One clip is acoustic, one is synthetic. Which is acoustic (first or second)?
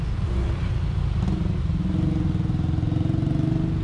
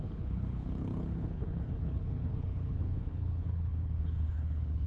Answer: first